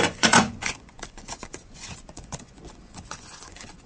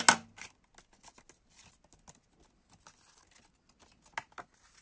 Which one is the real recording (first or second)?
second